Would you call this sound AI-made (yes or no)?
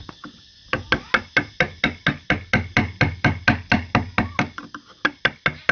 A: no